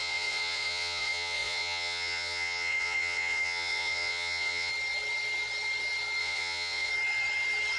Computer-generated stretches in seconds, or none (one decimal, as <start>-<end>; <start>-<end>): 0.0-4.7; 6.2-6.9